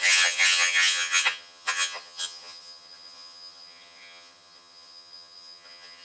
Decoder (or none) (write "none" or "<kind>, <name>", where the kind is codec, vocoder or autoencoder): vocoder, HiFi-GAN